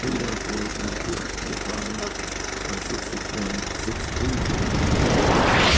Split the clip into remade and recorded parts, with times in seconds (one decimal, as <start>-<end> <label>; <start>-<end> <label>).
0.0-0.7 recorded; 0.7-1.5 remade; 1.5-5.8 recorded